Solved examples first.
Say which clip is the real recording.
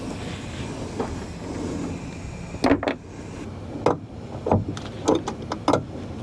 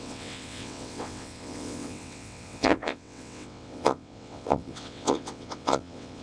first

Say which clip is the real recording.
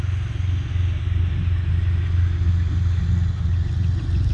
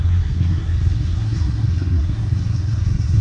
first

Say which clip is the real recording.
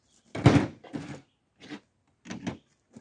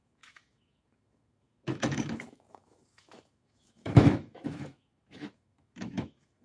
first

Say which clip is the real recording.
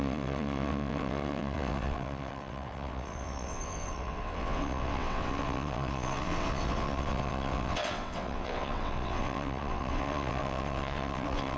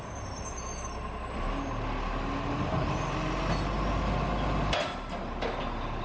second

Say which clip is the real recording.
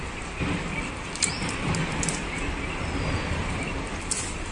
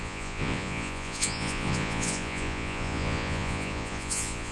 first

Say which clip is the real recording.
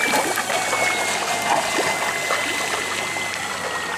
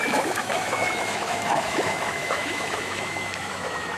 first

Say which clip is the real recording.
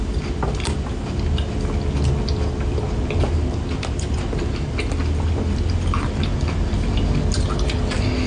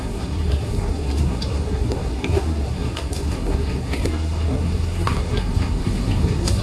first